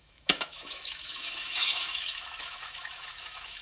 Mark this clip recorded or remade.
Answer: remade